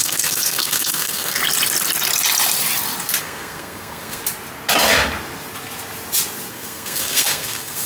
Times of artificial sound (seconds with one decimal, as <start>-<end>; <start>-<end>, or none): 0.0-1.4; 3.2-4.2; 6.5-7.9